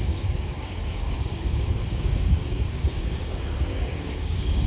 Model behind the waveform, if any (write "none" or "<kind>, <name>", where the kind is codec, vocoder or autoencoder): codec, DAC